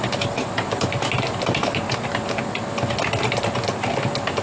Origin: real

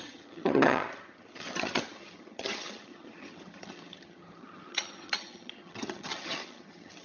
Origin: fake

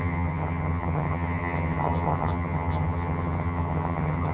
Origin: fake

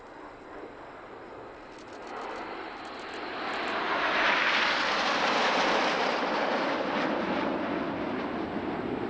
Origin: real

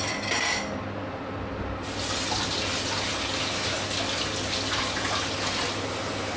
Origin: real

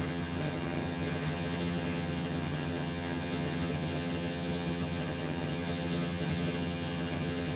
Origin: fake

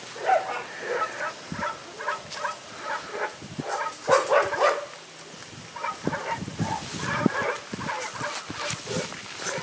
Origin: real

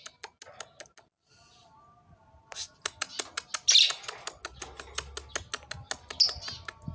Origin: real